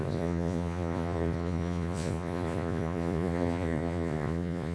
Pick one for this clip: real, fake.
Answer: fake